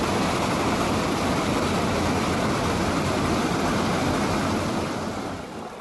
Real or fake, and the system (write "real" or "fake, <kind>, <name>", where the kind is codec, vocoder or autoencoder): real